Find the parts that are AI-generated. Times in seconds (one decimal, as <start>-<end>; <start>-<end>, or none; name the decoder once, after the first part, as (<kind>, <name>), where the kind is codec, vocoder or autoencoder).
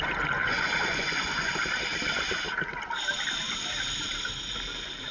0.4-1.5 (vocoder, Vocos)